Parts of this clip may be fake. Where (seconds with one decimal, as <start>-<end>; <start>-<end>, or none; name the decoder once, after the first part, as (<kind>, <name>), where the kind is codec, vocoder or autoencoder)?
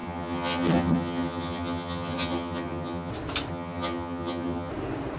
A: 0.0-3.1 (vocoder, HiFi-GAN); 3.5-4.7